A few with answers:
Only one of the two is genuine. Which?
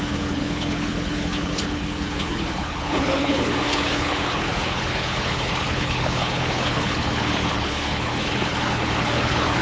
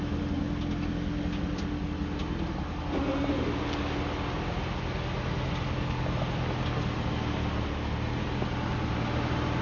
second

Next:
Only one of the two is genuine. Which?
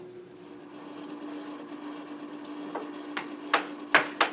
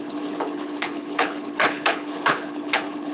first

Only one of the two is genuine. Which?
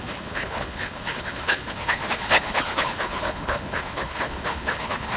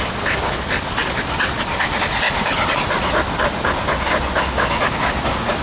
second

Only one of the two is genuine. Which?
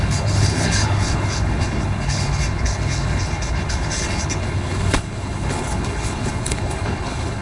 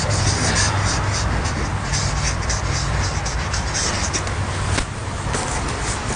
second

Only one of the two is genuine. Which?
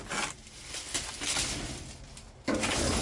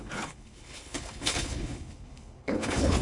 first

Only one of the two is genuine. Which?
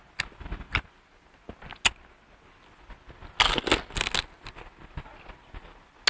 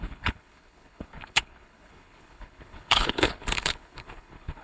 first